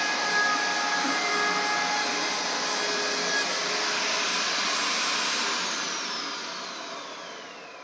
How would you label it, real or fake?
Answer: real